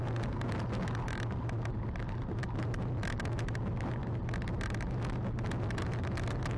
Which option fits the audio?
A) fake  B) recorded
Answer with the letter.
B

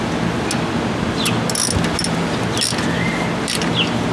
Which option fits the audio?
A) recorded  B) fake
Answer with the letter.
A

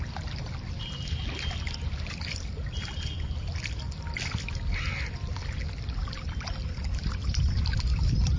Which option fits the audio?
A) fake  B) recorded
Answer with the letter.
B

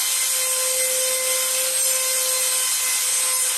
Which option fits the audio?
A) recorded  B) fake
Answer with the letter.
A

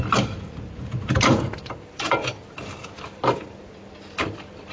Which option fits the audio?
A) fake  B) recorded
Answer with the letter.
B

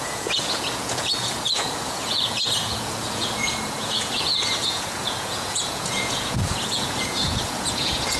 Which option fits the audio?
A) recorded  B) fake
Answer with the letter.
B